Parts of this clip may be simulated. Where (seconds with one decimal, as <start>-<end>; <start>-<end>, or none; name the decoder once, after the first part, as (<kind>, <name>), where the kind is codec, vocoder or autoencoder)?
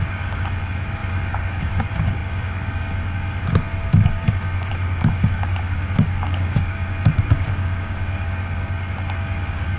0.0-9.8 (codec, DAC)